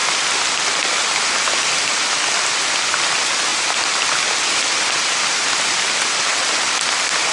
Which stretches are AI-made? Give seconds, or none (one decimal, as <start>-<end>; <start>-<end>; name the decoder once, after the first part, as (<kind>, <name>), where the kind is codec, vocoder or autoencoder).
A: none